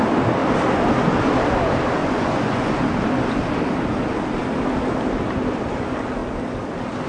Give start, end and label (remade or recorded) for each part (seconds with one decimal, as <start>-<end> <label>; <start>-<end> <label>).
0.0-2.0 recorded; 2.0-2.8 remade; 2.8-7.1 recorded